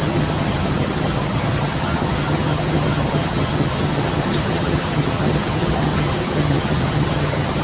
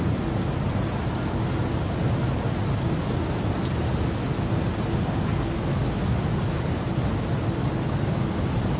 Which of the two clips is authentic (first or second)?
second